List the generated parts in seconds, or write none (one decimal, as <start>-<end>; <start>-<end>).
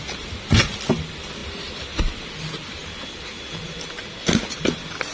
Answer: none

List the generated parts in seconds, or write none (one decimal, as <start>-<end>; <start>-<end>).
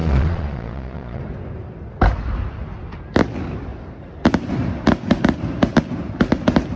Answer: 0.0-1.2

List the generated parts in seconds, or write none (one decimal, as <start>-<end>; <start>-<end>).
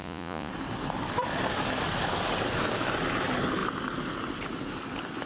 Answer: 0.0-0.5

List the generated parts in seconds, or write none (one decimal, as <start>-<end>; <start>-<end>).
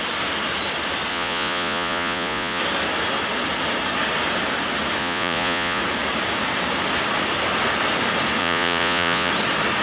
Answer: 1.1-2.6; 5.0-5.8; 8.4-9.3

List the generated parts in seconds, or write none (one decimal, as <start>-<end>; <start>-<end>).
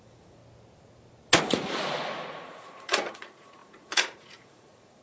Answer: 0.0-0.4; 1.4-5.0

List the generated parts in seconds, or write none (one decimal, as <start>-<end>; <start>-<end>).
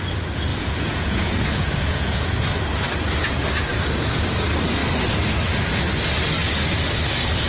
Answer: 0.5-2.4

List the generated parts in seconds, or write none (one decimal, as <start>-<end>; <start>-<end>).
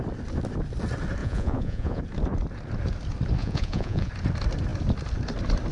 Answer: 1.2-2.0; 3.4-4.1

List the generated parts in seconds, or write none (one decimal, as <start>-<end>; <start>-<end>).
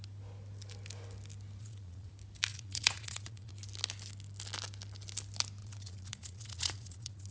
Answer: 1.6-2.1; 2.5-3.5; 5.6-7.3